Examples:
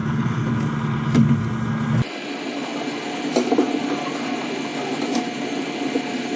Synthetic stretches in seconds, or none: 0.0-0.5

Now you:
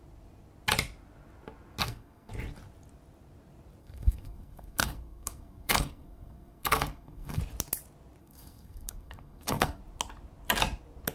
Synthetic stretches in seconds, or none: 1.8-2.3; 3.8-7.4; 8.2-9.8

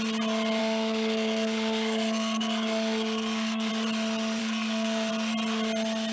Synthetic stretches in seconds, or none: 0.6-3.7; 4.4-5.1

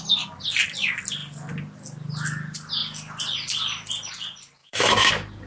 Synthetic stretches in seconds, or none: 4.6-5.1

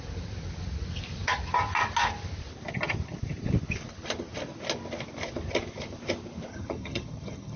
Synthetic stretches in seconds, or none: 6.5-7.6

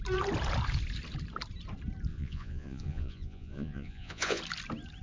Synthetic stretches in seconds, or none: 2.1-4.4

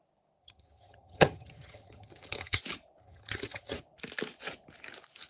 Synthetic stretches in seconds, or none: 0.4-2.6; 3.0-3.8